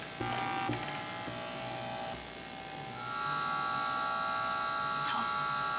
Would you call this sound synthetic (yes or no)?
no